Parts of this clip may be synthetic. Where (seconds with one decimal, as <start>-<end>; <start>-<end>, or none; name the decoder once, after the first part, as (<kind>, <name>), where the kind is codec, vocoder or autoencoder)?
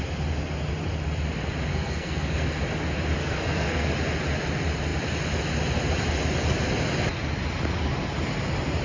1.7-2.6 (codec, SNAC); 3.2-3.9